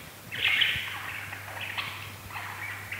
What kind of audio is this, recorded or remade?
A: remade